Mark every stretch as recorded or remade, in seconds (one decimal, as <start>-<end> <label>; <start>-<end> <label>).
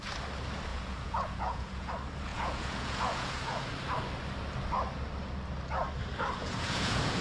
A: 0.0-0.7 recorded; 0.7-1.9 remade; 1.9-2.3 recorded; 2.3-3.6 remade; 3.6-6.4 recorded; 6.4-7.2 remade